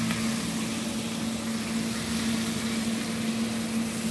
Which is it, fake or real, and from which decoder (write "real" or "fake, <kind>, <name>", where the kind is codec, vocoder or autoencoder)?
real